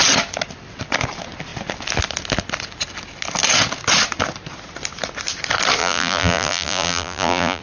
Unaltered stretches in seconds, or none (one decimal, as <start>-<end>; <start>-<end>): 0.0-5.8